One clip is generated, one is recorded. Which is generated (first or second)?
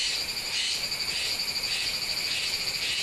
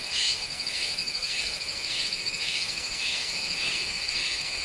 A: second